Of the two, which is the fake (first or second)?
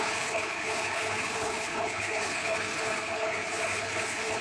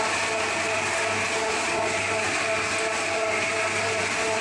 first